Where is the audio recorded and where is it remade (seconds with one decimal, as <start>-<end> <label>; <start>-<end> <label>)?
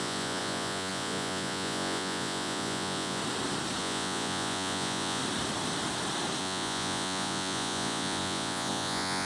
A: 0.0-3.2 remade; 3.2-3.8 recorded; 3.8-5.2 remade; 5.2-6.4 recorded; 6.4-9.3 remade